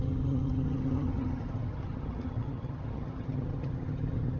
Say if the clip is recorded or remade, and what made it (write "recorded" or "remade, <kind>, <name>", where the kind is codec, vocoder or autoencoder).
remade, vocoder, HiFi-GAN